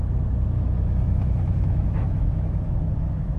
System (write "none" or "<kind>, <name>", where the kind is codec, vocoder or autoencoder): autoencoder, DAC-VAE